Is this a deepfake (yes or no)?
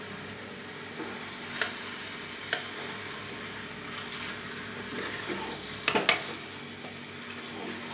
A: no